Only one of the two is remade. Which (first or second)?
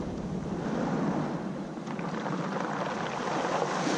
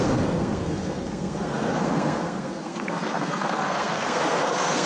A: second